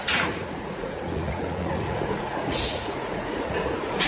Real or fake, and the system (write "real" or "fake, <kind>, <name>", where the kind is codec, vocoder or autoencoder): fake, vocoder, Vocos